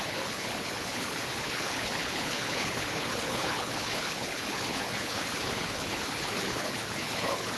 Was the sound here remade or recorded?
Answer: remade